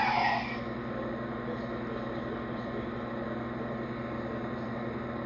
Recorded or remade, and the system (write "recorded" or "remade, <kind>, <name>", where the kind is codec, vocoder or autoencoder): recorded